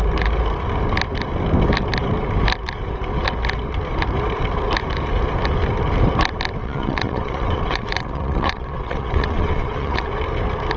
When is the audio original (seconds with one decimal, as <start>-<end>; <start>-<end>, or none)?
0.0-6.6; 10.1-10.8